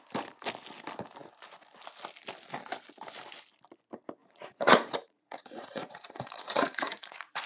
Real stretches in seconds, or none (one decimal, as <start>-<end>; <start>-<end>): 0.0-4.2